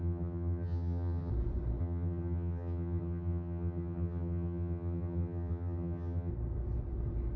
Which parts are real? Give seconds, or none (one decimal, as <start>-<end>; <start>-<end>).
1.3-1.8; 6.3-7.4

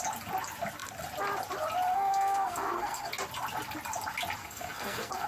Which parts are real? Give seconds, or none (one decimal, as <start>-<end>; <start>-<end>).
0.0-1.9; 3.1-4.4